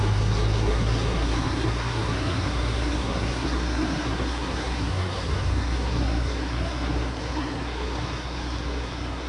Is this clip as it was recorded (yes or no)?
no